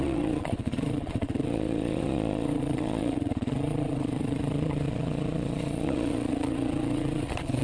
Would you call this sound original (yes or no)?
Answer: no